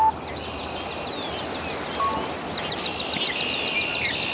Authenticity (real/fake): real